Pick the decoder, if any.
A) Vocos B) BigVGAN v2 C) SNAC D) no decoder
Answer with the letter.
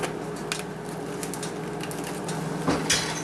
D